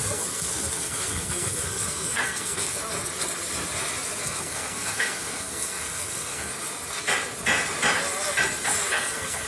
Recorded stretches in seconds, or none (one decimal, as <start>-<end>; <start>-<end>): 2.8-4.2; 6.5-8.9